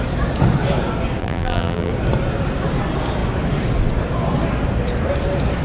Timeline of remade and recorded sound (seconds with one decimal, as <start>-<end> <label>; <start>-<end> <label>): 0.0-1.2 recorded; 1.2-1.9 remade; 1.9-5.6 recorded